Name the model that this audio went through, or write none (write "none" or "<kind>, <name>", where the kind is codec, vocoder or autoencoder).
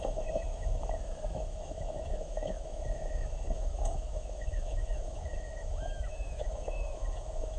autoencoder, DAC-VAE